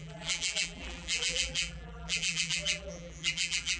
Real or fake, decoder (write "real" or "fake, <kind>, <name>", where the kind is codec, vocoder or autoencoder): fake, vocoder, BigVGAN v2